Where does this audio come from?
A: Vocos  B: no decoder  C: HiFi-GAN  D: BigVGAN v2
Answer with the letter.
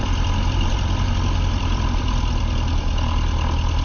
D